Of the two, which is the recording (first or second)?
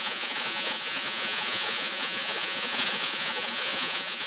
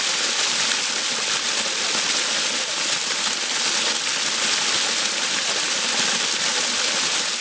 second